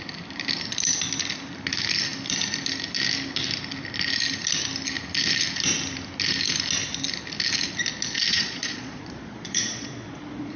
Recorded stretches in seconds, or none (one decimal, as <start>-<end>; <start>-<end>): 0.0-8.3